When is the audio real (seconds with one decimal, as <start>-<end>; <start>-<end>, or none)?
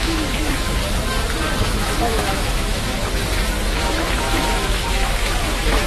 0.8-1.6; 3.0-3.8